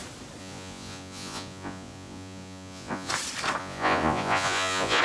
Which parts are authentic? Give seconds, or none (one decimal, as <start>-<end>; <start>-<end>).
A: 0.0-0.4; 3.1-3.6

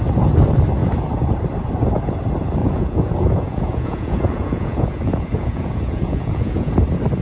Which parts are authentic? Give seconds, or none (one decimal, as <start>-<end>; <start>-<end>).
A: 0.0-2.6; 6.7-7.2

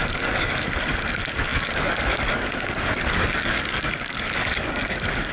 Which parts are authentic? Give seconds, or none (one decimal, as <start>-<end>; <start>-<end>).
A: none

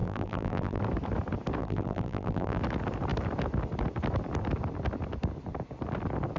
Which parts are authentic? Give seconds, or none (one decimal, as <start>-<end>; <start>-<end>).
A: 0.8-1.6; 2.6-6.4